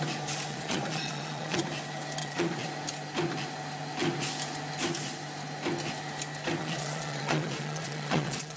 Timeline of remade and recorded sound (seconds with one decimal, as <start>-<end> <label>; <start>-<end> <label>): 0.0-0.5 recorded; 0.5-1.6 remade; 1.6-2.2 recorded; 2.2-2.7 remade; 2.7-6.6 recorded; 6.6-8.6 remade